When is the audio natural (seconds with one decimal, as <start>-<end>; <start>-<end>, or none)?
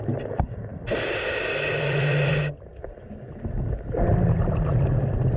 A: 0.0-0.7; 2.3-5.4